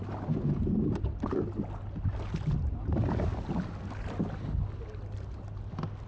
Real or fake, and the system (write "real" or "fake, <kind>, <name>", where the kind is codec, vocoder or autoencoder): real